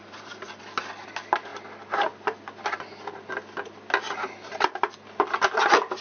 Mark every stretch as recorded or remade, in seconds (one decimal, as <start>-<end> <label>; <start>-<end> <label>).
0.0-0.6 remade; 0.6-6.0 recorded